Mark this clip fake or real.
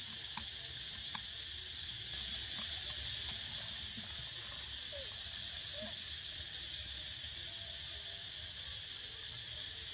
real